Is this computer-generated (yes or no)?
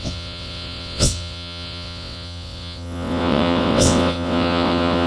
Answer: yes